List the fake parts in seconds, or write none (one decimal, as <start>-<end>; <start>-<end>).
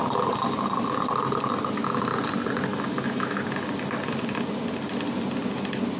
2.7-3.4